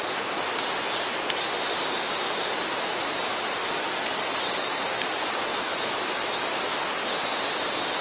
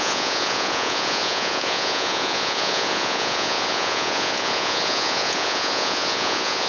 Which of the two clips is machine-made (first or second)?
second